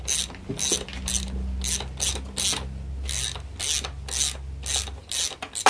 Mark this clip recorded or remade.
recorded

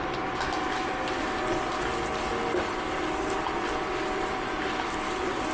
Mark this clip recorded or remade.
recorded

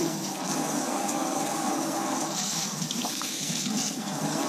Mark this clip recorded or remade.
remade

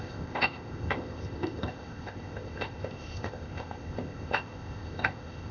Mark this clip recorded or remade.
remade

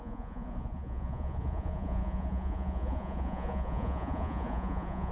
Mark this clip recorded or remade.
remade